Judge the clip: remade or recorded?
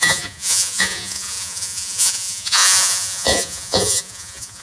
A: remade